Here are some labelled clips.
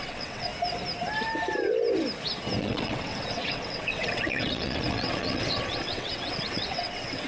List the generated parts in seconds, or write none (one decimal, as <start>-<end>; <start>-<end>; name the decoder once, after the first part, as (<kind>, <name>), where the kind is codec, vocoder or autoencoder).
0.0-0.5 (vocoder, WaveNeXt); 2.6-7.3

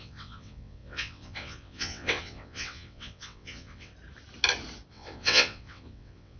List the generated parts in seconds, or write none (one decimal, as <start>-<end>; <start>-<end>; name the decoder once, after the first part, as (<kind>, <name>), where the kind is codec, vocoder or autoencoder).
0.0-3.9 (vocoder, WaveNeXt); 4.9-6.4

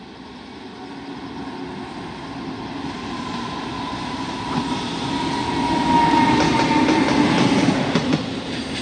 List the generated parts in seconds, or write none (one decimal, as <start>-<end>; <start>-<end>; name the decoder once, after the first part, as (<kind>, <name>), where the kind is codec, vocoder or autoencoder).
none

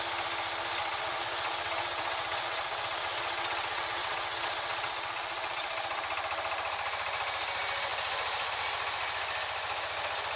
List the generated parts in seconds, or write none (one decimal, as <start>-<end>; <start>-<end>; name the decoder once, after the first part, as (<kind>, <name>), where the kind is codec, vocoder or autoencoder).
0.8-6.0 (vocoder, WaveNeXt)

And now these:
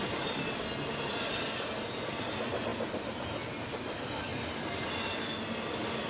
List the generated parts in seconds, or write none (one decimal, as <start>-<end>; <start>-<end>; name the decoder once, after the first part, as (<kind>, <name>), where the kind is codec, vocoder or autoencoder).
none